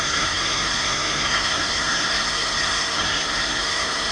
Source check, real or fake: fake